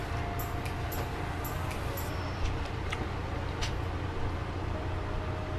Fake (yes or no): no